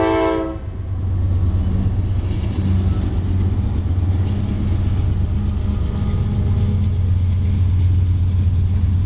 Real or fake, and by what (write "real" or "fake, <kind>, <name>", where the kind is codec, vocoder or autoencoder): real